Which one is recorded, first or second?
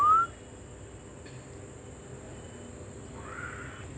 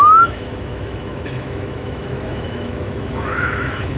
first